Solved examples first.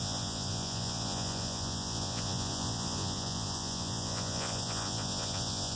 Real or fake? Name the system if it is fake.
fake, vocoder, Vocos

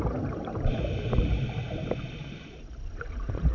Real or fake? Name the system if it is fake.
real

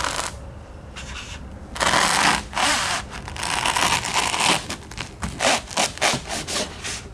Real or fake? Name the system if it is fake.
real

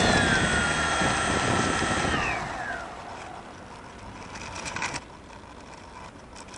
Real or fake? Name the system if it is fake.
real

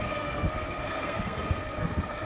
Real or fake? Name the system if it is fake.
fake, codec, SNAC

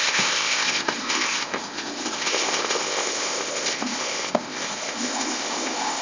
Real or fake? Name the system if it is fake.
fake, codec, ZipCodec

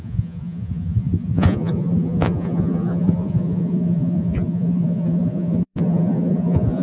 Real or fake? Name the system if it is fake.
fake, vocoder, Vocos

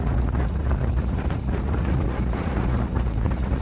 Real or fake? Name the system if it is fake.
fake, vocoder, Vocos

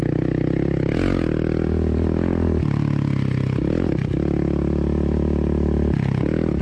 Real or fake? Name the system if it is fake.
real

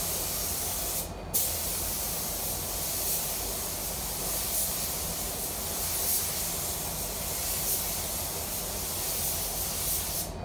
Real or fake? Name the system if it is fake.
real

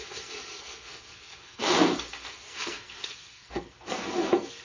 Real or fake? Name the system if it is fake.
fake, codec, SNAC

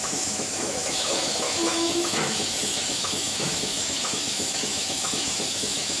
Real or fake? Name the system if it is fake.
fake, autoencoder, DAC-VAE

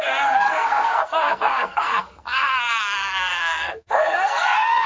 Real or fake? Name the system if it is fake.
fake, codec, SNAC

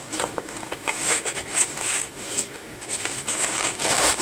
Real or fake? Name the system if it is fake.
fake, codec, DAC